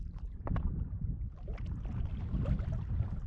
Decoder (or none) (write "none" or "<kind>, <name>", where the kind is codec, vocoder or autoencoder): none